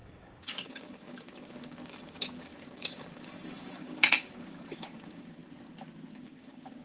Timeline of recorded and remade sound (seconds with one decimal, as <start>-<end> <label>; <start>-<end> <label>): 0.0-5.4 remade; 5.4-6.2 recorded; 6.2-6.8 remade

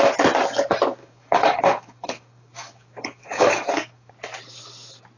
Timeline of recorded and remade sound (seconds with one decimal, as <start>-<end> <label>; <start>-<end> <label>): 0.0-1.0 recorded; 1.0-4.1 remade; 4.1-5.2 recorded

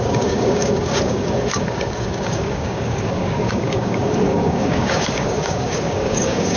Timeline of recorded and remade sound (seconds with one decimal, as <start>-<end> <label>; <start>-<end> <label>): 0.0-6.6 remade

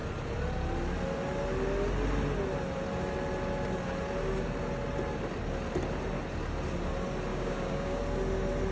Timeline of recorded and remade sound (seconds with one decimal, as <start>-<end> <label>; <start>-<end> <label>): 0.0-7.3 recorded; 7.3-8.0 remade; 8.0-8.7 recorded

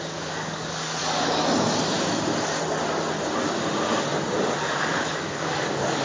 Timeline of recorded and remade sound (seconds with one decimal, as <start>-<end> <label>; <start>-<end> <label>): 0.0-1.0 remade; 1.0-4.6 recorded; 4.6-6.0 remade

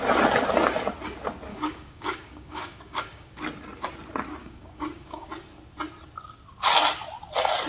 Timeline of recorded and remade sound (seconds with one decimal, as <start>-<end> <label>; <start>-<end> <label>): 0.0-1.5 recorded; 1.5-3.4 remade; 3.4-4.4 recorded; 4.4-5.3 remade; 5.3-7.7 recorded

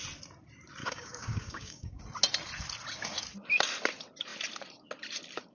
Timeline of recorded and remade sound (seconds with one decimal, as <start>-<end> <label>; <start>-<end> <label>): 0.0-0.8 recorded; 0.8-2.0 remade; 2.0-5.5 recorded